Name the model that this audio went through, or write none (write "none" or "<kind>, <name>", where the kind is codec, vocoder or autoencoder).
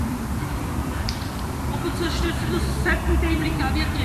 vocoder, BigVGAN v2